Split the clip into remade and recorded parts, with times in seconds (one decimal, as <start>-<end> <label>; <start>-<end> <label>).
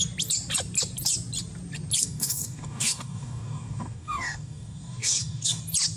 0.0-2.0 recorded; 2.0-5.6 remade; 5.6-6.0 recorded